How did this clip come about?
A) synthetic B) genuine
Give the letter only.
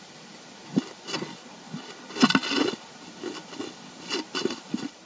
B